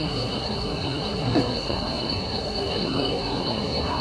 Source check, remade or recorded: remade